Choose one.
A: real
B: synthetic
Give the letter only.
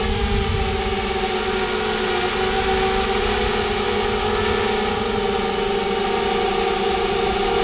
A